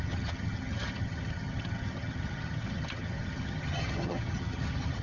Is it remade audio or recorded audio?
remade